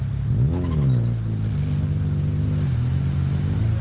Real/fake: real